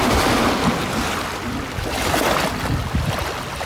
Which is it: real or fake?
real